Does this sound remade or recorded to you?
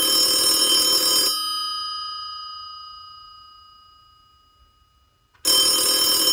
recorded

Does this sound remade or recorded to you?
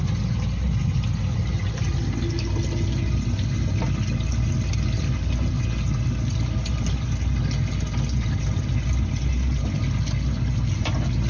recorded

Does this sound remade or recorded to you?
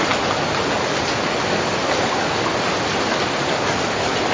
recorded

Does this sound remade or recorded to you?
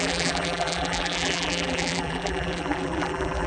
remade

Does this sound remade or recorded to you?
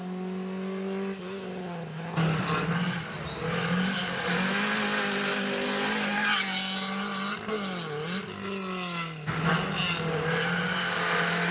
recorded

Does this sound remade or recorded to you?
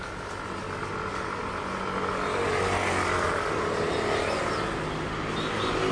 recorded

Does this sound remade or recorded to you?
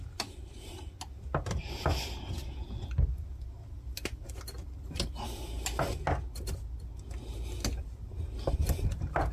recorded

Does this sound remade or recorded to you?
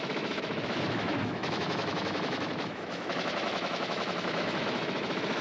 remade